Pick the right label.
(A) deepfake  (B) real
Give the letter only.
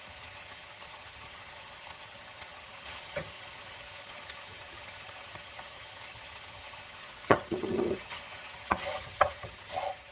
A